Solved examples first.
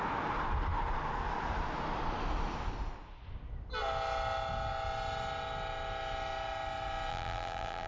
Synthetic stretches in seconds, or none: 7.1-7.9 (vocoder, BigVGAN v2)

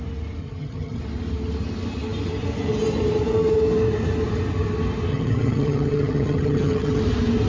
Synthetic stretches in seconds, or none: 0.4-1.0 (vocoder, HiFi-GAN); 5.1-7.0

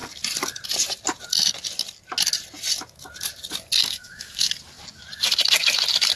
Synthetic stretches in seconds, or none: 3.8-4.5 (autoencoder, DAC-VAE)